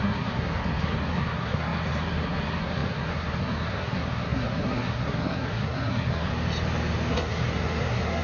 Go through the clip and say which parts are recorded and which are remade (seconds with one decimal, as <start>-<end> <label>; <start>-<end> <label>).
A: 0.0-6.3 remade; 6.3-7.1 recorded; 7.1-8.2 remade